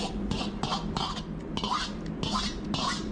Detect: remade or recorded recorded